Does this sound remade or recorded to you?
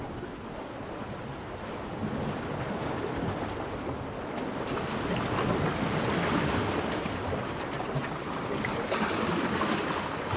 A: recorded